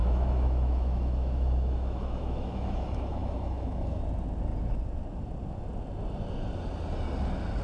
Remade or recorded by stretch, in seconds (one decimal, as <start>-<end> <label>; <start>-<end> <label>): 0.0-4.0 remade; 4.0-7.6 recorded